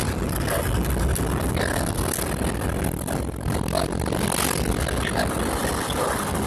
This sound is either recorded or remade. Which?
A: recorded